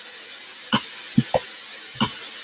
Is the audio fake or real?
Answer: real